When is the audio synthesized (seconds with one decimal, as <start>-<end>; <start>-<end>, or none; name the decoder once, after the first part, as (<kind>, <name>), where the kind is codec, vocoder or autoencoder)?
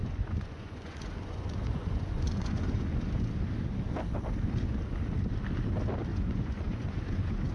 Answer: 0.0-2.9 (vocoder, Vocos); 6.1-7.5